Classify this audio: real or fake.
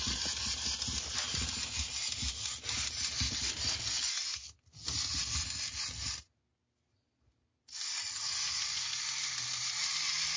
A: real